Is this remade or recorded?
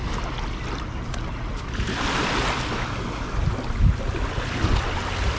recorded